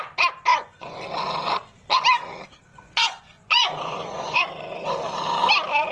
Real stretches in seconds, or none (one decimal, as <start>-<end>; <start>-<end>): 0.0-0.5; 1.0-2.7; 4.4-5.9